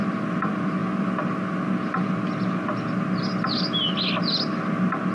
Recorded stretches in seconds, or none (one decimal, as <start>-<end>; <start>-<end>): 0.0-5.1